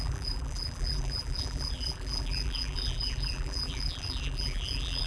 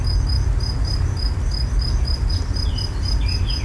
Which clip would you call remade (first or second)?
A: first